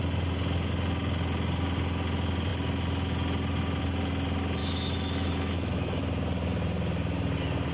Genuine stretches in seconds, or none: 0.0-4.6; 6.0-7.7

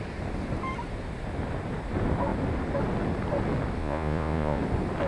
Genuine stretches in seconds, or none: 0.0-3.8; 4.6-5.1

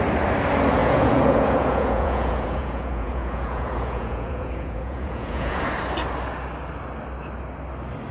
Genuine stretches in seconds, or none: 0.0-0.8; 5.6-8.1

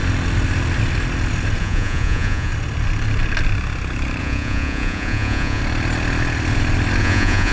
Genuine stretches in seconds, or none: 0.0-1.6; 2.5-4.2; 5.6-7.0